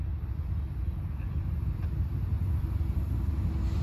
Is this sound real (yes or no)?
yes